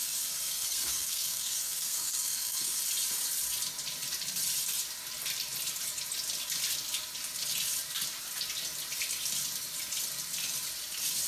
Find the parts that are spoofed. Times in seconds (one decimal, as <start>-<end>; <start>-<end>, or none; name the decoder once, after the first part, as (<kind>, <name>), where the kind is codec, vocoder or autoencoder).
0.0-2.8 (codec, SNAC)